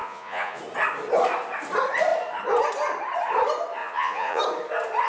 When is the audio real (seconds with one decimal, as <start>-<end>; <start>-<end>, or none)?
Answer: 0.6-3.8; 4.4-5.1